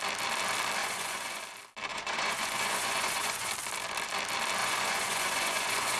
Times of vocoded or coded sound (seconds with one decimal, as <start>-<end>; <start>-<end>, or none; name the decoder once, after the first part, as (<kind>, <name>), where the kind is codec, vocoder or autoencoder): 0.8-1.4 (vocoder, Vocos); 1.9-3.5; 4.6-6.0